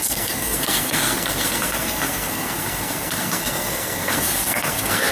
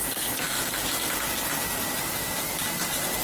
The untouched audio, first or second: second